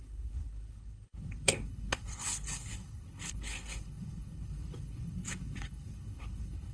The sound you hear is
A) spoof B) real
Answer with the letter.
A